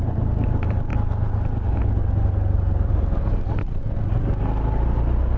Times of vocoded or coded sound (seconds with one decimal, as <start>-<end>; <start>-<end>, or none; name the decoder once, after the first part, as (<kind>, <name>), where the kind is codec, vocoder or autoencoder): none